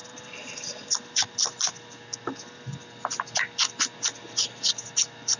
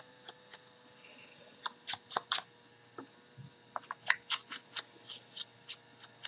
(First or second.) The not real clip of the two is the second